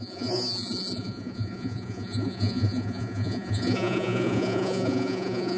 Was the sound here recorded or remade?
remade